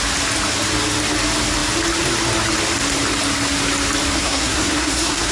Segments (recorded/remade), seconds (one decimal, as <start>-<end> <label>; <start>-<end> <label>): 0.0-4.2 recorded; 4.2-5.3 remade